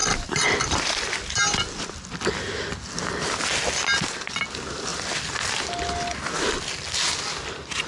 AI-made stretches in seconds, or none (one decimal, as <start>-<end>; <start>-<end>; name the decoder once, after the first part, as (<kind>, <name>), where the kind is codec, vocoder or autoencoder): 0.0-0.8 (vocoder, BigVGAN v2)